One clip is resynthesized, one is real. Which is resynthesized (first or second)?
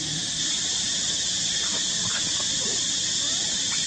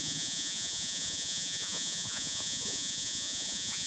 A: second